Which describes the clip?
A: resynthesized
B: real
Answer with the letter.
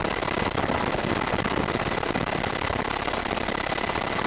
B